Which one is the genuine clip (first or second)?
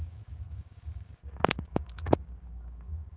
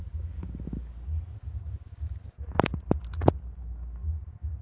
second